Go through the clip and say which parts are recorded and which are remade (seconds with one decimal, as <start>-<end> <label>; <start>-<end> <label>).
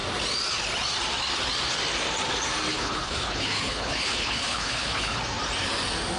0.0-2.7 recorded; 2.7-5.2 remade; 5.2-6.2 recorded